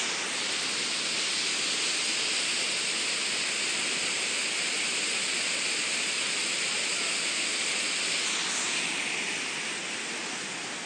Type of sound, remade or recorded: recorded